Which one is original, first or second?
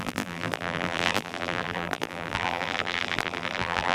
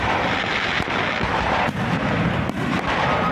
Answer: second